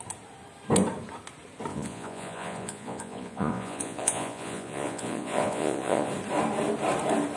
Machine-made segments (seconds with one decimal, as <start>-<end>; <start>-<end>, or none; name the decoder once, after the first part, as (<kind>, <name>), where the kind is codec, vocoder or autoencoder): 1.7-6.1 (vocoder, Vocos)